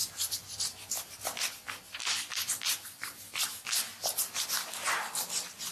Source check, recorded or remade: recorded